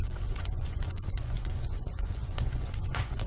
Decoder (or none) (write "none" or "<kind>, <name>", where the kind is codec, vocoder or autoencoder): vocoder, Vocos